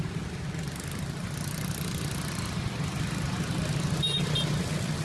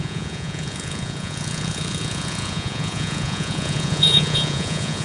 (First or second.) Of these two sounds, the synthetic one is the second